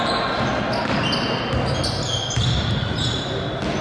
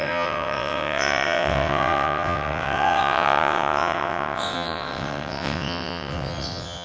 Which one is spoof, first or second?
second